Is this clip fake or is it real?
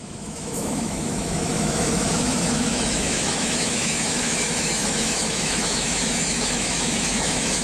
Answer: fake